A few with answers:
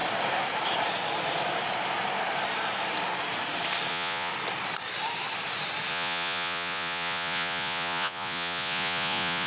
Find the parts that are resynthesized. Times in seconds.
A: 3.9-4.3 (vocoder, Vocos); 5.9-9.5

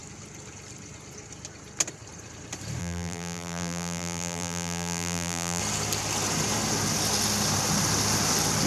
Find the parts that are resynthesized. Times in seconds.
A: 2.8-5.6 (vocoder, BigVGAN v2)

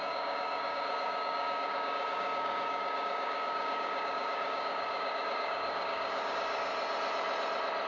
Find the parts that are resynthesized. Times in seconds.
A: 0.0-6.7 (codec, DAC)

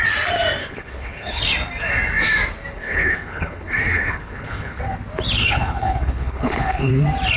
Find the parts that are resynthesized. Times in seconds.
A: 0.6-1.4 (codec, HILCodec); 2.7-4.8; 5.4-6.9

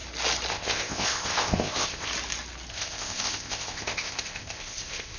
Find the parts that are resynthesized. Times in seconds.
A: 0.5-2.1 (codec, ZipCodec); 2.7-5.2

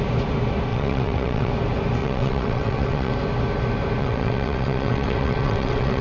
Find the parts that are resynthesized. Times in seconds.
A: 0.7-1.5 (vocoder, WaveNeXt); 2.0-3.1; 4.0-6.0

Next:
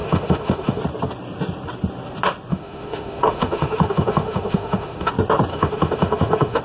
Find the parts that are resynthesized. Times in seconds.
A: 0.0-0.8 (autoencoder, DAC-VAE); 2.5-5.1; 5.5-6.6

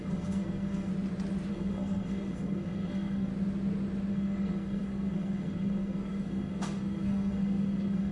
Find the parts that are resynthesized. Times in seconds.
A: 0.0-0.9 (codec, SNAC); 1.5-3.3; 4.1-8.1